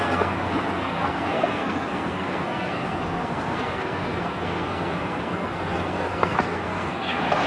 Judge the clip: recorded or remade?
remade